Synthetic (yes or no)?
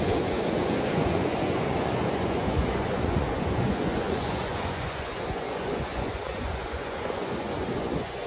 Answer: yes